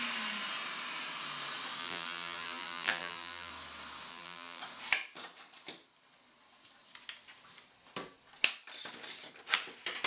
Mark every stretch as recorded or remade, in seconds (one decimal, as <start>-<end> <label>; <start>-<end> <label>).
0.0-1.8 recorded; 1.8-3.5 remade; 3.5-4.1 recorded; 4.1-4.6 remade; 4.6-10.1 recorded